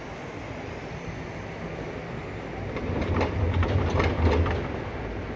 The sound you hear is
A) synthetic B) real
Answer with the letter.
B